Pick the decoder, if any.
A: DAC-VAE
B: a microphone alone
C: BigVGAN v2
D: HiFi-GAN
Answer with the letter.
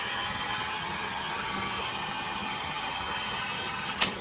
D